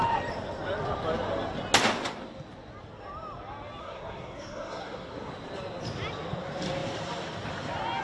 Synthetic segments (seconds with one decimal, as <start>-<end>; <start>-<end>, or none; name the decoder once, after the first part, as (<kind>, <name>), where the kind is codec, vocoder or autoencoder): 3.8-5.3 (codec, SNAC)